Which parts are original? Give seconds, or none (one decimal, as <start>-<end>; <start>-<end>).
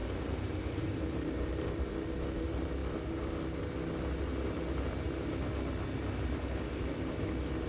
1.9-7.7